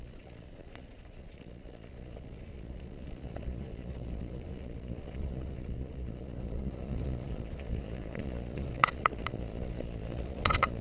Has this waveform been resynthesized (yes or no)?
yes